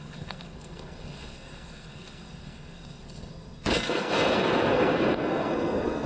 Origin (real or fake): fake